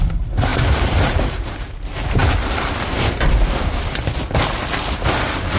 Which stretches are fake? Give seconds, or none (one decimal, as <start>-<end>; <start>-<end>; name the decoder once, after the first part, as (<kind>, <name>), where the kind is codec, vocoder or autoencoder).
0.5-1.7 (vocoder, BigVGAN v2)